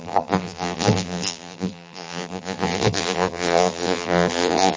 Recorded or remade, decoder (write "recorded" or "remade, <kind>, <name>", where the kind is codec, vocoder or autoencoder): remade, vocoder, BigVGAN v2